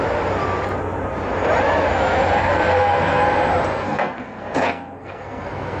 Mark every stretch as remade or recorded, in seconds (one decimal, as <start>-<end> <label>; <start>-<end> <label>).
0.0-2.4 recorded; 2.4-3.2 remade; 3.2-3.7 recorded; 3.7-5.8 remade